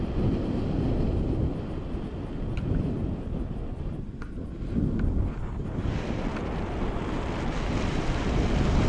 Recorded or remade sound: recorded